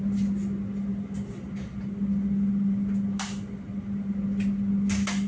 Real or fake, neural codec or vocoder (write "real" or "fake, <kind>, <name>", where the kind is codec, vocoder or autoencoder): real